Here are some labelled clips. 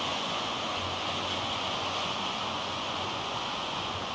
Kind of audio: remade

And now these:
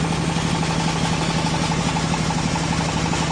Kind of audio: recorded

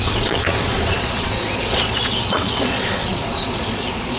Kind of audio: remade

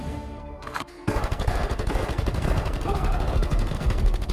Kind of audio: remade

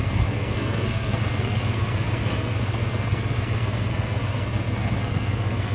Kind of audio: remade